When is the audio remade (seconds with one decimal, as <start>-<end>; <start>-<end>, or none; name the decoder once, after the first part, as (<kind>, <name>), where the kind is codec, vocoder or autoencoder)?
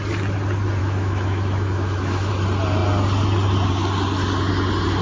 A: 0.8-2.3 (autoencoder, DAC-VAE)